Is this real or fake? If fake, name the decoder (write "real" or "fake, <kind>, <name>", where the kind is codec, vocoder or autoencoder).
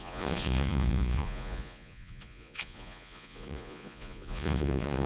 fake, vocoder, Vocos